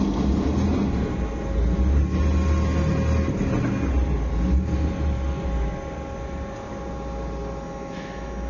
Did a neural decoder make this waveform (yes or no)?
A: no